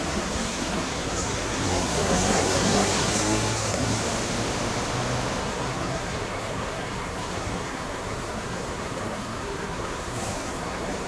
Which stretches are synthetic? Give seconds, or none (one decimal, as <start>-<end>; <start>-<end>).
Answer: 0.0-4.0; 5.4-11.1